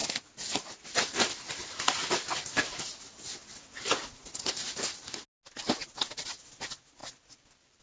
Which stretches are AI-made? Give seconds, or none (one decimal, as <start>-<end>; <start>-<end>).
none